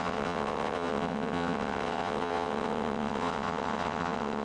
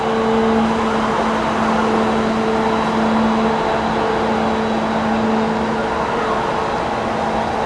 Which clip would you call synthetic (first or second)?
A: first